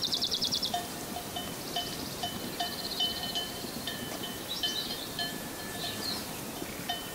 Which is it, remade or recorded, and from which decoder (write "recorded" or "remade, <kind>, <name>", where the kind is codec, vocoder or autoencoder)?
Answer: remade, vocoder, BigVGAN v2